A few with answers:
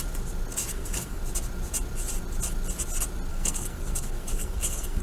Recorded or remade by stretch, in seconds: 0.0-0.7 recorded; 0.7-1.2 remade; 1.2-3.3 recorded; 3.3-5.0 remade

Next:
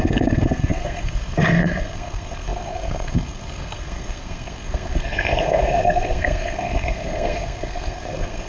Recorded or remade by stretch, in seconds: 0.0-8.5 remade

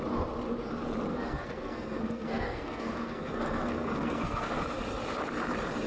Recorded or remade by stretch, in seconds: 0.0-1.1 recorded; 1.1-4.5 remade; 4.5-5.9 recorded

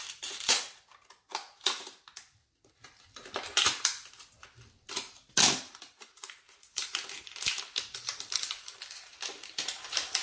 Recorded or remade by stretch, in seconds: 0.0-0.5 remade; 0.5-1.8 recorded; 1.8-2.4 remade; 2.4-5.8 recorded; 5.8-10.2 remade

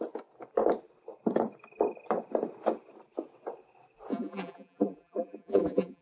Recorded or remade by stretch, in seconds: 0.0-4.1 recorded; 4.1-6.0 remade